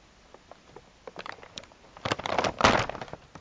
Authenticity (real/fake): fake